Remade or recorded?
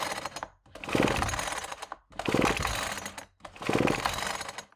recorded